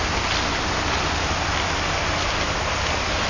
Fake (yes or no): no